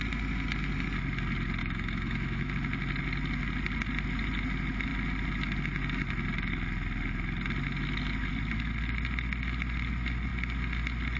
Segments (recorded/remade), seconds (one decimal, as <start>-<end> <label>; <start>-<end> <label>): 0.0-1.6 recorded; 1.6-2.5 remade; 2.5-11.2 recorded